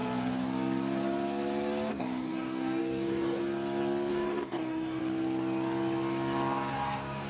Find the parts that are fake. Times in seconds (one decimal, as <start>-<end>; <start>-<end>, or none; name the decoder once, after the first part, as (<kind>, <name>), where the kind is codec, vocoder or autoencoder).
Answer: 1.9-3.4 (codec, DAC); 4.1-5.0; 6.7-7.3